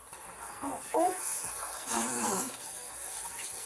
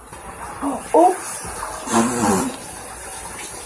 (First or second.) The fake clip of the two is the first